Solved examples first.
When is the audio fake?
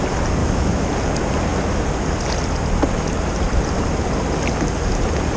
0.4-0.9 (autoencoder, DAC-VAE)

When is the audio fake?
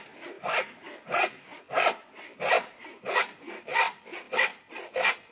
0.8-4.0 (vocoder, BigVGAN v2)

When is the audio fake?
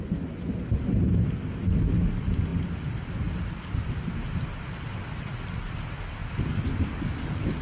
none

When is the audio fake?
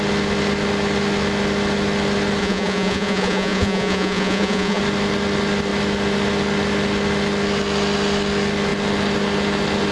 2.4-4.8 (vocoder, Vocos)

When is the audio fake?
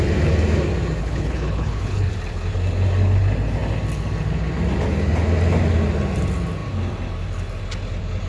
1.0-2.1 (codec, HILCodec)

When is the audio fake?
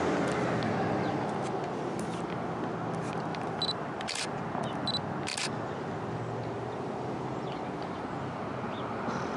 3.3-4.4 (vocoder, BigVGAN v2)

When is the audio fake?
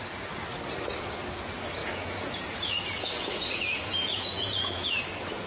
1.8-5.0 (vocoder, Vocos)